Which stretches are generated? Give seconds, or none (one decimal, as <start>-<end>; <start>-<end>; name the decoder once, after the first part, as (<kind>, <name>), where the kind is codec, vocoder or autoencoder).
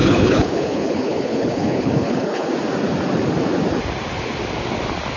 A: 0.0-2.5 (codec, HILCodec)